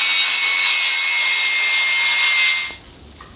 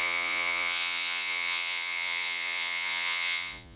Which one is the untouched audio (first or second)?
first